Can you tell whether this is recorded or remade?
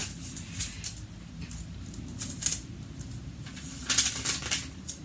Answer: recorded